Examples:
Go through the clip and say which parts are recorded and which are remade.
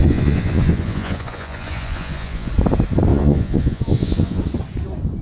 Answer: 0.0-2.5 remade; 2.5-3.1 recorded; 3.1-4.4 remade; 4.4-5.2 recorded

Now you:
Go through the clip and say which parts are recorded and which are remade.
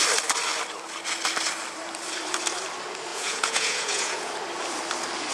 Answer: 0.0-3.1 recorded; 3.1-4.3 remade; 4.3-5.3 recorded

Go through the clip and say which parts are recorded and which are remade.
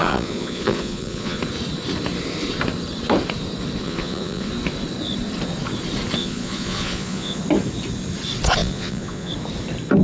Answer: 0.0-1.4 remade; 1.4-3.8 recorded; 3.8-4.5 remade; 4.5-6.2 recorded; 6.2-7.4 remade; 7.4-8.6 recorded; 8.6-9.3 remade; 9.3-10.0 recorded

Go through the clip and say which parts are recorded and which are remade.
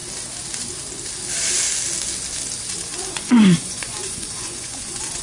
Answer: 0.0-3.1 recorded; 3.1-5.2 remade